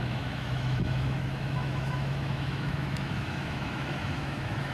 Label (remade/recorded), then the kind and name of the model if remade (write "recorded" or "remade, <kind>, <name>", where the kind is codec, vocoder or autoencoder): remade, autoencoder, DAC-VAE